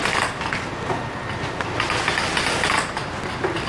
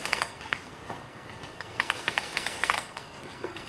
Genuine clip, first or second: first